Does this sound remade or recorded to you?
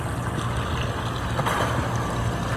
recorded